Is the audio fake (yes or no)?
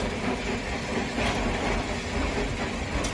no